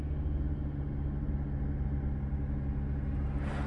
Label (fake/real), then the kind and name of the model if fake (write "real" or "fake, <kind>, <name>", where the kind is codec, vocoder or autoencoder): real